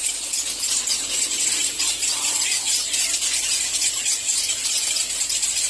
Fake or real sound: real